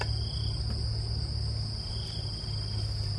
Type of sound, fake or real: real